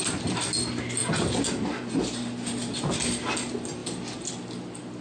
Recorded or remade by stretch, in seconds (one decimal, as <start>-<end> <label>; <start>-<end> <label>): 0.0-5.0 recorded